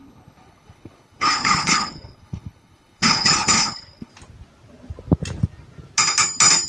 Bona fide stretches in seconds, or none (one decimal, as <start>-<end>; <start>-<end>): 4.1-6.7